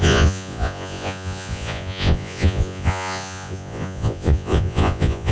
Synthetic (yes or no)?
yes